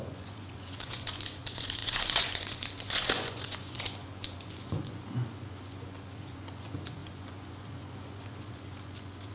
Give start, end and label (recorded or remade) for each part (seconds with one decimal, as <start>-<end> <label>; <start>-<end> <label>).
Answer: 0.0-9.3 remade